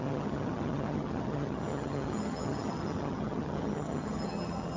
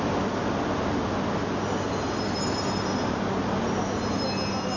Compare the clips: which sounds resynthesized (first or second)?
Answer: first